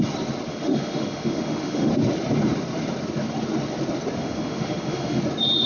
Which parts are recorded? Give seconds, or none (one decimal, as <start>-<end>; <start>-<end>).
0.0-0.5; 1.9-4.2; 5.2-5.7